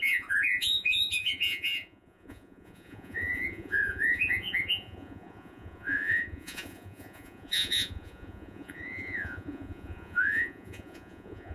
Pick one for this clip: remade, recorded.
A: remade